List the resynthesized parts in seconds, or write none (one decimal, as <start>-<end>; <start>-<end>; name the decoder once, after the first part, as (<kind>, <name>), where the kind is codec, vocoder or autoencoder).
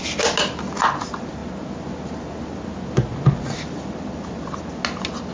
none